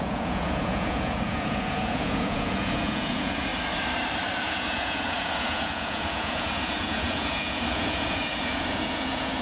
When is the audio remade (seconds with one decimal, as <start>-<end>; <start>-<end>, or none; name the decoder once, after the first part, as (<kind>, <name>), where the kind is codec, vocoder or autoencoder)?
0.0-3.5 (vocoder, Vocos); 4.4-9.4